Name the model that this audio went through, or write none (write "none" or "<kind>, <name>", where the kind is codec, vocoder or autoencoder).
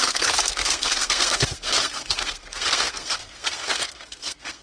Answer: codec, SNAC